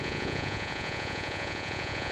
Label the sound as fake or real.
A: fake